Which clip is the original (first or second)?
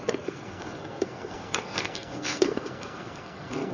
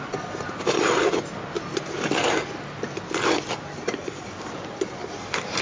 second